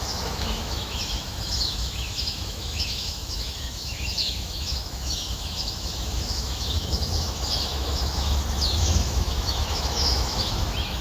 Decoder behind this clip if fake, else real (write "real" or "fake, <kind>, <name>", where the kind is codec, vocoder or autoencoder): fake, autoencoder, DAC-VAE